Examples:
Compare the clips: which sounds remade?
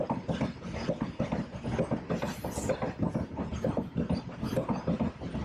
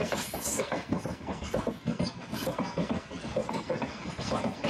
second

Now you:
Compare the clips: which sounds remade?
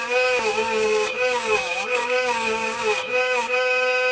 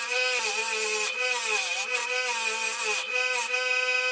first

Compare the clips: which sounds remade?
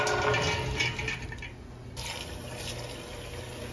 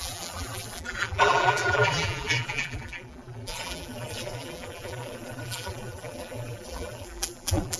second